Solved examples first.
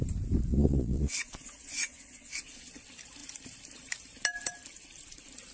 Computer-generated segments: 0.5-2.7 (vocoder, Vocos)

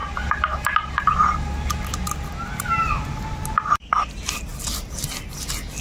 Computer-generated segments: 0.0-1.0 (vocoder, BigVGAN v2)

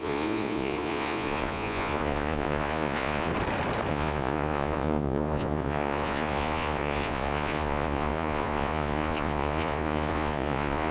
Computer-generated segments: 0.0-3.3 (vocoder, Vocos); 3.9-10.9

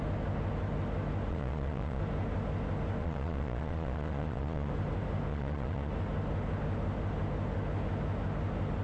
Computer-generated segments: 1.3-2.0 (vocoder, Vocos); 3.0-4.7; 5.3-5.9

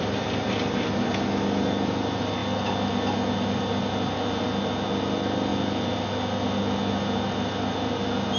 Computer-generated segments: none

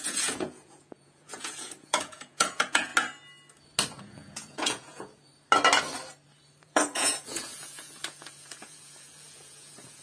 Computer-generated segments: 0.0-2.9 (vocoder, Vocos); 4.0-5.3; 6.6-10.0

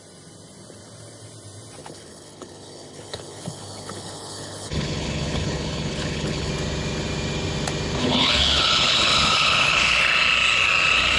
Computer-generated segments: 1.8-6.5 (codec, HILCodec); 8.0-10.0

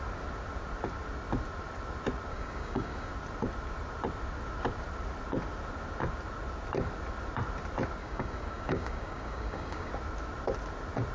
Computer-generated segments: 2.3-3.1 (codec, DAC); 8.0-9.9